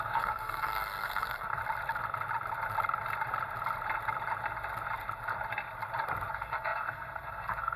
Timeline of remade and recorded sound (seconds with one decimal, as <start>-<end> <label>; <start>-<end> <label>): 0.0-1.6 remade; 1.6-6.3 recorded; 6.3-7.8 remade